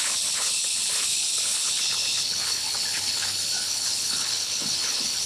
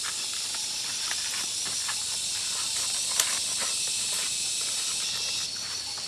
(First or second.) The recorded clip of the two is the second